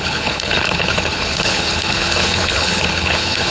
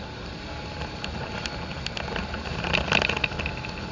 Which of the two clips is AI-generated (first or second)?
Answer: first